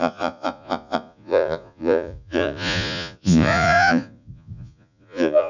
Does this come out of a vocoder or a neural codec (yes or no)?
yes